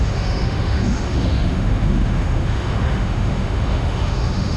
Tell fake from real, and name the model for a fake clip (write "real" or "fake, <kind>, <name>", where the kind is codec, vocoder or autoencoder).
fake, autoencoder, DAC-VAE